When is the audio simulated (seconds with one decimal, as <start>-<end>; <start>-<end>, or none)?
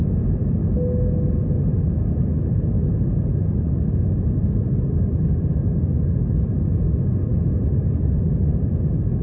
none